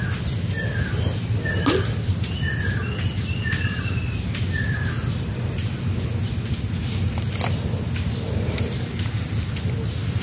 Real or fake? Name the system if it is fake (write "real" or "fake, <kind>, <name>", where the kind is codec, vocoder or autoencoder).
real